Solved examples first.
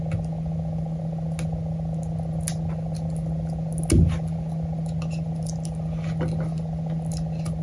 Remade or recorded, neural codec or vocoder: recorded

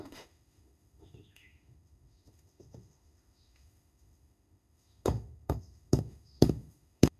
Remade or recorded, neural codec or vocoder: remade, autoencoder, DAC-VAE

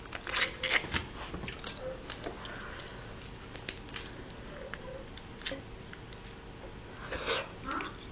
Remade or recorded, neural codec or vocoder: recorded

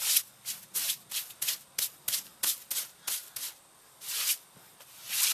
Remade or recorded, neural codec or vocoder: recorded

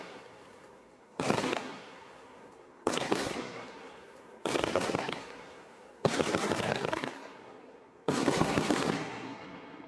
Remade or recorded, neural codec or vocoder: remade, codec, SNAC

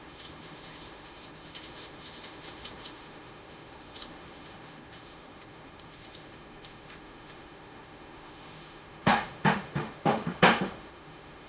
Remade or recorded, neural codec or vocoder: remade, autoencoder, DAC-VAE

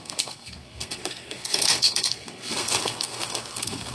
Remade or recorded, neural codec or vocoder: remade, codec, SNAC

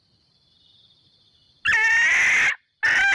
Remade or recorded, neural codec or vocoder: recorded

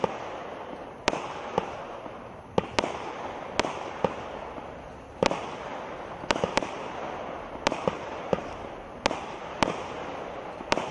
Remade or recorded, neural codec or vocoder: recorded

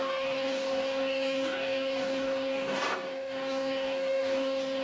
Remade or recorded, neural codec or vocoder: remade, codec, DAC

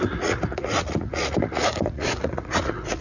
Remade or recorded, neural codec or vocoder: remade, vocoder, Vocos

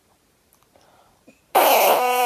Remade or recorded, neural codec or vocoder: remade, vocoder, BigVGAN v2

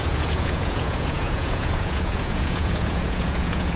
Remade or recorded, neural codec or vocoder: remade, vocoder, Vocos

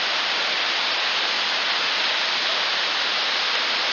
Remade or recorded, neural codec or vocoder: recorded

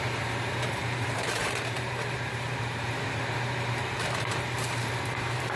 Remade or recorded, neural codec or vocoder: remade, vocoder, BigVGAN v2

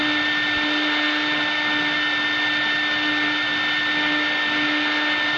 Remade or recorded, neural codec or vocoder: recorded